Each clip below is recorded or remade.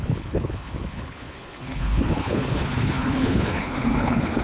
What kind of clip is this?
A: remade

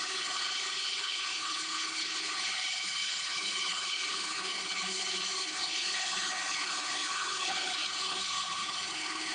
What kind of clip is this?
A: remade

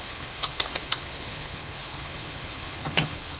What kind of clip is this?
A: remade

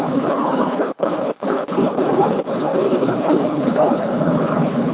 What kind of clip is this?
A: remade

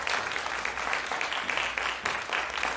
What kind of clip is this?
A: recorded